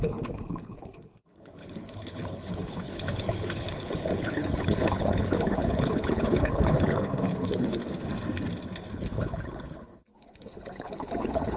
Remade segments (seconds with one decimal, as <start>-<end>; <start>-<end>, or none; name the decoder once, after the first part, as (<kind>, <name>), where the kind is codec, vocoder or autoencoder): 0.0-7.8 (codec, HILCodec); 8.9-11.6